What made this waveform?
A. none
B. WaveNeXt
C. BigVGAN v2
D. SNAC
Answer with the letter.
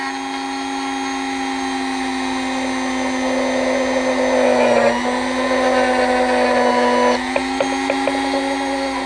A